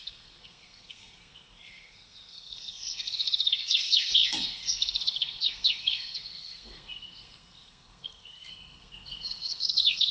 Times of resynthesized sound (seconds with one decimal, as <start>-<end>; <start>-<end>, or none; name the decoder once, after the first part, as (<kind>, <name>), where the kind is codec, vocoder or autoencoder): 0.0-10.1 (codec, SNAC)